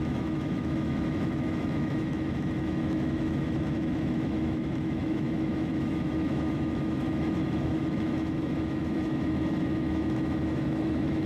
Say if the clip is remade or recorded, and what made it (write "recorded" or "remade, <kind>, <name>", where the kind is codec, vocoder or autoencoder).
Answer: remade, autoencoder, DAC-VAE